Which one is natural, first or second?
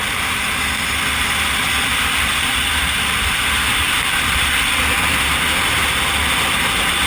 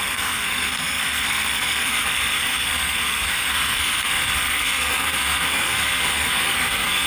first